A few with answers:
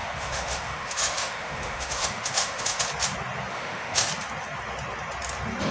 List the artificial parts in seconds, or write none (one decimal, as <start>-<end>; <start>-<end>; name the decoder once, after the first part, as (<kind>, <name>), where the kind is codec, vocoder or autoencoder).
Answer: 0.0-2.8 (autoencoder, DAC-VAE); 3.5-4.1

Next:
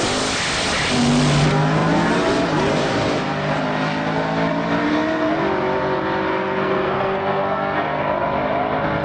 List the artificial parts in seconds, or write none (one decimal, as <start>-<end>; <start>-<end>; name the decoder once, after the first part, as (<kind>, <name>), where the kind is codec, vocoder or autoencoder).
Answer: 6.3-8.0 (codec, SNAC)

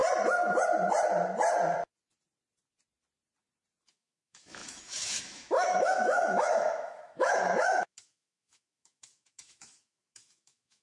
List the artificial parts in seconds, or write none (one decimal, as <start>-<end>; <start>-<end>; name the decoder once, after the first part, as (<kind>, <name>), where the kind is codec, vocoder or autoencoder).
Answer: 3.9-10.8 (autoencoder, DAC-VAE)

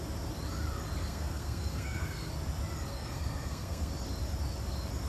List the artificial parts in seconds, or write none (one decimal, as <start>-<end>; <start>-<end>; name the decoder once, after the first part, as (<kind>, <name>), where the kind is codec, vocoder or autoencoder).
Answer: 1.0-2.3 (codec, SNAC); 2.9-3.9

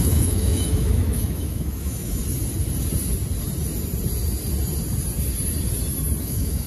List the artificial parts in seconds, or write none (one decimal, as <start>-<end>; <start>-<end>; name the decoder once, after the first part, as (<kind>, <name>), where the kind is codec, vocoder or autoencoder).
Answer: 0.0-2.2 (autoencoder, DAC-VAE); 6.2-6.7

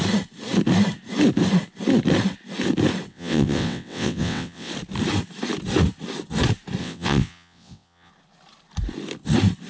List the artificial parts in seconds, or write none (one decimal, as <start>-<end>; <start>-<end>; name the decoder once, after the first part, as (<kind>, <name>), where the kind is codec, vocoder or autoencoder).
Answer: 3.1-4.7 (vocoder, WaveNeXt); 6.8-8.1

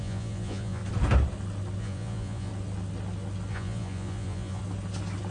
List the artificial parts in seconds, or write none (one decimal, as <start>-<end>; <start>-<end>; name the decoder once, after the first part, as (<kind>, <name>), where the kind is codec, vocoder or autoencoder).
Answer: 0.0-0.8 (vocoder, Vocos); 1.8-2.5; 3.5-4.6